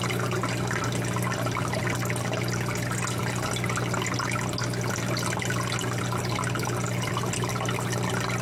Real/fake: real